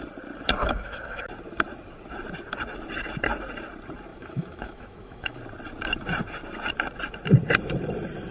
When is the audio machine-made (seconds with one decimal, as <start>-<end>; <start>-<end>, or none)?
0.6-1.2; 4.1-5.4